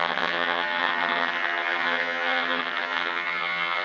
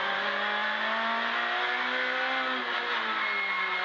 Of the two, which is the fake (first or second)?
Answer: first